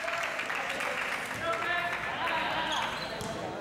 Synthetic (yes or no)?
no